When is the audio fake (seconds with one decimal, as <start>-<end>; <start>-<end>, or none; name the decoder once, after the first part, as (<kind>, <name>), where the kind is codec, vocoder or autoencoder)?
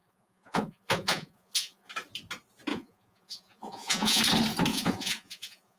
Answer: 0.0-1.9 (vocoder, Vocos); 2.7-4.2; 4.7-5.8